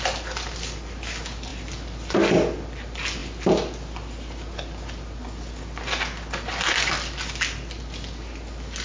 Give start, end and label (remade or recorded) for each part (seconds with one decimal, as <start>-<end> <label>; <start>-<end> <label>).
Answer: 0.0-8.8 recorded